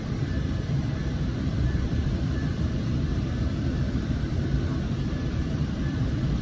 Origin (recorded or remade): remade